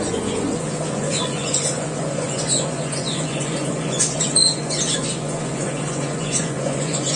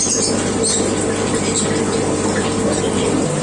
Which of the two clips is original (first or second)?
second